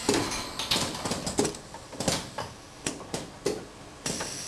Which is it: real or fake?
real